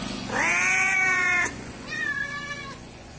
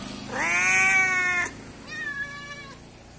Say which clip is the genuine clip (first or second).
second